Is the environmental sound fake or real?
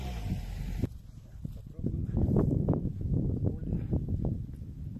real